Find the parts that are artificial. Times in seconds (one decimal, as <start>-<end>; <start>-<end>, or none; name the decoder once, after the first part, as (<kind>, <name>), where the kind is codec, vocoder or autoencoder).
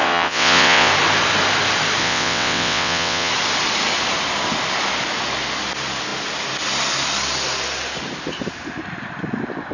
0.0-0.9 (vocoder, WaveNeXt); 2.0-3.3